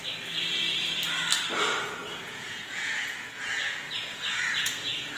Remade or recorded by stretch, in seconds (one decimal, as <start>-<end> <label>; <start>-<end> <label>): 0.0-2.0 recorded; 2.0-5.2 remade